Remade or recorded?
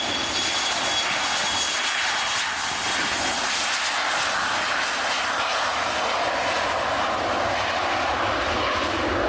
recorded